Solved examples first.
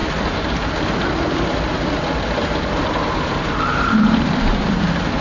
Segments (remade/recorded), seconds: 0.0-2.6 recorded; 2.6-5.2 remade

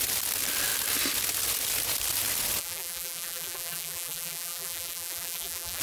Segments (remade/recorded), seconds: 0.0-2.6 recorded; 2.6-5.8 remade

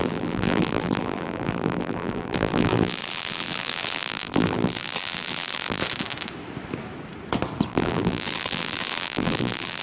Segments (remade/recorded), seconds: 0.0-5.8 remade; 5.8-7.7 recorded; 7.7-9.8 remade

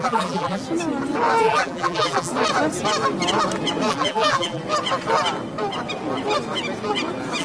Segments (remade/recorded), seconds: 0.0-0.6 remade; 0.6-1.4 recorded; 1.4-2.3 remade; 2.3-3.9 recorded; 3.9-4.6 remade; 4.6-7.4 recorded

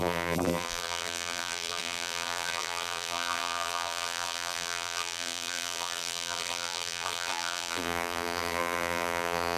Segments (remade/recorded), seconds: 0.0-9.6 remade

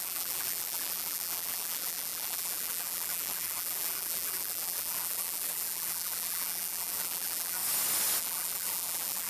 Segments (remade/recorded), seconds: 0.0-7.6 remade; 7.6-8.2 recorded; 8.2-9.3 remade